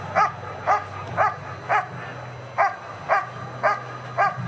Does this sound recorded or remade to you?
recorded